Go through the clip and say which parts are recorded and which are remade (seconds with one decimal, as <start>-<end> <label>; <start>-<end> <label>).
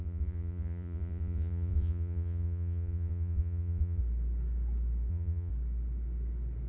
0.0-4.0 remade; 4.0-5.1 recorded; 5.1-5.5 remade; 5.5-6.7 recorded